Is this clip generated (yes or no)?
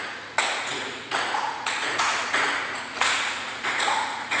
yes